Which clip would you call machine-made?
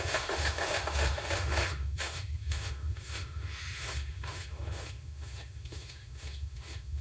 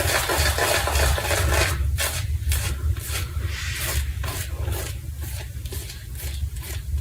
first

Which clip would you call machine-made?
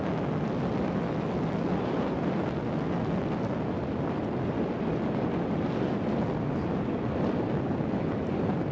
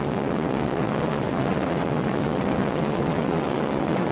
second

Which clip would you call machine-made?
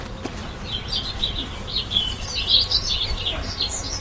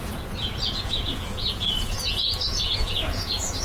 second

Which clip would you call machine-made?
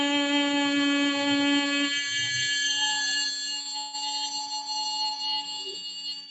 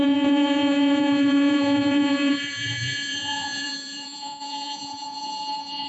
second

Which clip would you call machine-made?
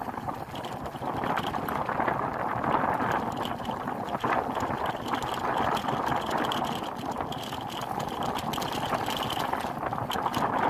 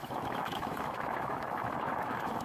second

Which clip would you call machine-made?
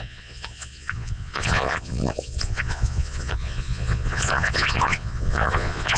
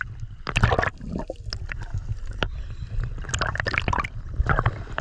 first